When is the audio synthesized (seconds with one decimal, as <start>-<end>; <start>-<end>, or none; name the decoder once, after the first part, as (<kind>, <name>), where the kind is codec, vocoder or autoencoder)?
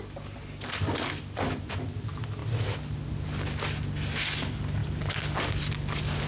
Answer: none